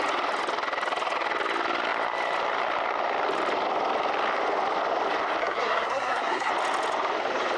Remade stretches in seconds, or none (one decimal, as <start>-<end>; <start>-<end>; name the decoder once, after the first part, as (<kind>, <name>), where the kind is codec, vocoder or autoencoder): 5.4-6.5 (codec, SNAC)